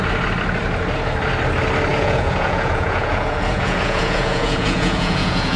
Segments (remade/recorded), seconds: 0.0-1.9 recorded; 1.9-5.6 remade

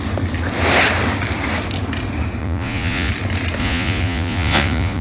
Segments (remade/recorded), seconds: 0.0-2.4 recorded; 2.4-3.1 remade; 3.1-3.6 recorded; 3.6-5.0 remade

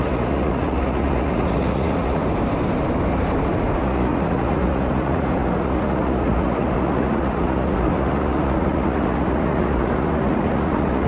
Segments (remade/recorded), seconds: 0.0-2.2 remade; 2.2-3.8 recorded; 3.8-11.1 remade